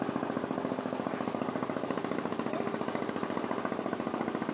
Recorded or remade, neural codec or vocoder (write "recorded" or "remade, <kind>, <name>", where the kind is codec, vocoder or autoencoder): recorded